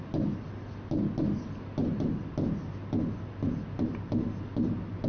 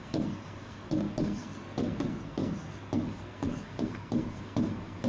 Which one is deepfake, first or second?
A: second